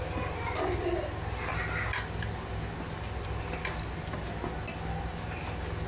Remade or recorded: recorded